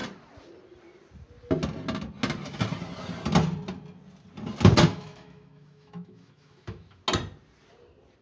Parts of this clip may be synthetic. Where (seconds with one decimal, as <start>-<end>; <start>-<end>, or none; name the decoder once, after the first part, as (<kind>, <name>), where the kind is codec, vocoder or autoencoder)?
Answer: 4.9-7.0 (autoencoder, DAC-VAE)